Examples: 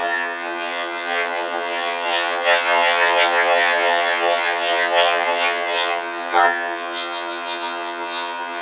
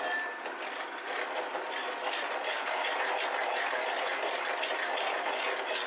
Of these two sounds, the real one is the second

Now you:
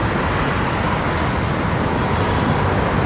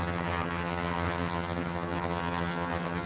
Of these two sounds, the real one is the first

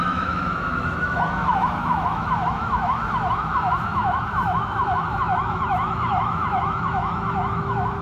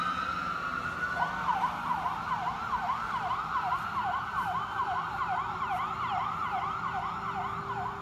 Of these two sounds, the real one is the second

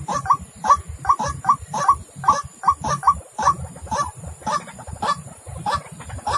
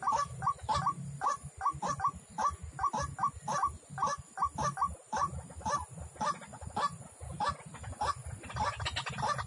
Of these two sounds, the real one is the second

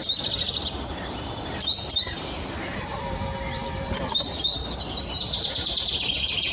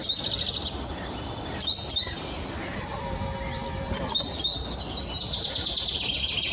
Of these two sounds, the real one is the second